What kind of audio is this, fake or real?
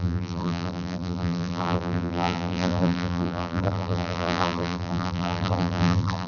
fake